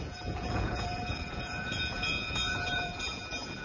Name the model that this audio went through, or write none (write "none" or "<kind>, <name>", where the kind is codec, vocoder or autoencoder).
vocoder, Vocos